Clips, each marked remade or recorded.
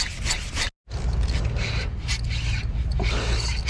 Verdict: recorded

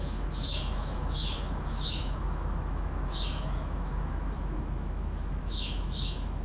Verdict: remade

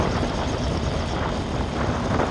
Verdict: recorded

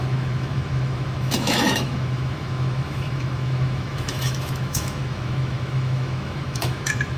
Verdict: remade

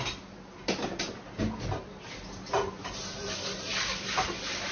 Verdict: recorded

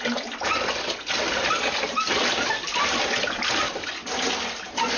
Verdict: recorded